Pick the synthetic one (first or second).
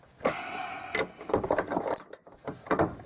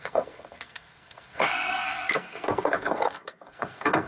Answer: second